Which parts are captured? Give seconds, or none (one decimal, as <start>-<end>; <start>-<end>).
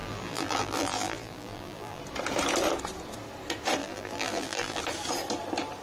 2.0-3.8; 4.8-5.8